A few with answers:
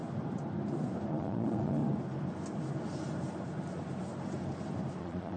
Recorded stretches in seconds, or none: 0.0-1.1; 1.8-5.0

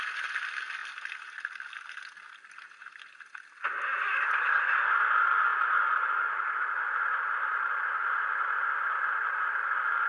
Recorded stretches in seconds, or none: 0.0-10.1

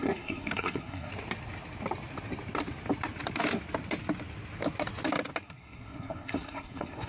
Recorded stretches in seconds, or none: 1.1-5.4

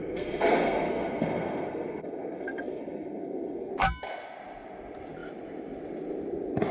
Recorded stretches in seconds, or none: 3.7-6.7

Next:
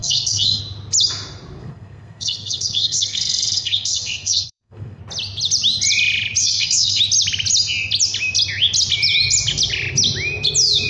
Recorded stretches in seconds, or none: 0.6-1.6; 5.0-6.4; 7.0-10.9